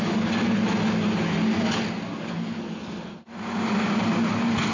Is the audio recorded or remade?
recorded